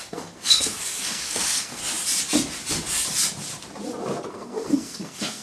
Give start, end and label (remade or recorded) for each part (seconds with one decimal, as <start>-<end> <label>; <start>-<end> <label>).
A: 0.0-1.8 remade; 1.8-4.3 recorded; 4.3-5.4 remade